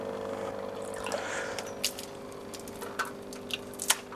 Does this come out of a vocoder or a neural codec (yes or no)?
no